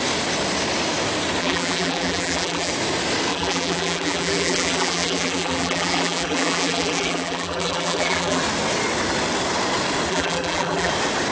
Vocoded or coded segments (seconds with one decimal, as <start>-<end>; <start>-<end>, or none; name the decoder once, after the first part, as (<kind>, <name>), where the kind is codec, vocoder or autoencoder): 1.4-2.7 (vocoder, BigVGAN v2); 3.3-8.4; 10.1-10.9